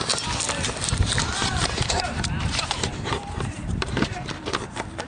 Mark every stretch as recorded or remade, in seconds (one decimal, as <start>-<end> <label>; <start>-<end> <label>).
0.0-1.3 recorded; 1.3-4.4 remade; 4.4-5.1 recorded